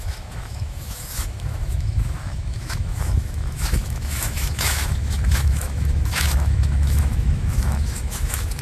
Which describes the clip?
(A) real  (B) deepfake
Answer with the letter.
B